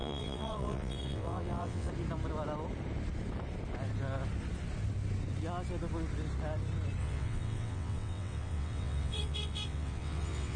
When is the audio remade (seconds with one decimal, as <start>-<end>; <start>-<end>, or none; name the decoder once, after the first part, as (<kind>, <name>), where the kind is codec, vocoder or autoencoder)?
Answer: 0.0-1.9 (vocoder, WaveNeXt); 7.0-10.6

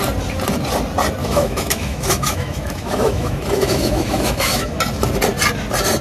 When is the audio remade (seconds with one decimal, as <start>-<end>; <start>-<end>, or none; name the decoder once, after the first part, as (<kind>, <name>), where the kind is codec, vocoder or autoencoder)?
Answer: 1.2-4.8 (autoencoder, DAC-VAE)

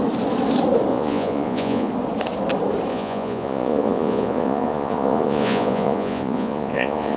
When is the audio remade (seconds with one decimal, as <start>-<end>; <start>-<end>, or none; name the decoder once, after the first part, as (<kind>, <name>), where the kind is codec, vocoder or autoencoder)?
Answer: 0.9-1.9 (vocoder, Vocos); 2.9-7.2

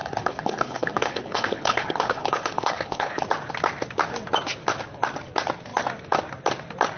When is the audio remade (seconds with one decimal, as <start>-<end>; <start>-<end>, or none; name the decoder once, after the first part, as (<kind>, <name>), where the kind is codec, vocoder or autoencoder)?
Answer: 0.0-3.2 (codec, HILCodec)

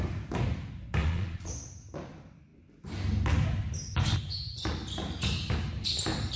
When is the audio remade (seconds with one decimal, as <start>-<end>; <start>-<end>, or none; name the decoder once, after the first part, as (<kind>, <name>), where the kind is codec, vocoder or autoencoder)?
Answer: 1.0-1.5 (vocoder, Vocos)

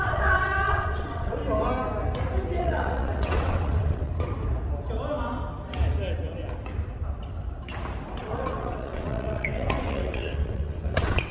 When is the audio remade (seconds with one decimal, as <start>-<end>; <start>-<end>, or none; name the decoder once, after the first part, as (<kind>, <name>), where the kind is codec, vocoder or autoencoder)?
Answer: 0.0-1.4 (vocoder, WaveNeXt); 2.6-4.1; 8.2-11.3

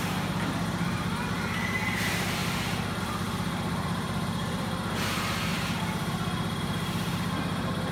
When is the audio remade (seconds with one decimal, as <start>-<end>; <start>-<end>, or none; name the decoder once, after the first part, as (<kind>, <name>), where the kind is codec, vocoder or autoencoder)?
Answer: 0.0-2.4 (vocoder, BigVGAN v2); 3.0-5.5; 6.6-7.9

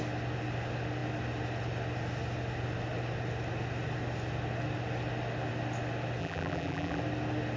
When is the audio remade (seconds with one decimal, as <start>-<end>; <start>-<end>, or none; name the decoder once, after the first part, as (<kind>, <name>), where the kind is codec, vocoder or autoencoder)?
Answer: 6.2-7.0 (vocoder, BigVGAN v2)